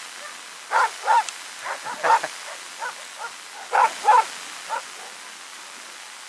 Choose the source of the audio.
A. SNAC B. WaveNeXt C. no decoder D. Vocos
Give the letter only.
C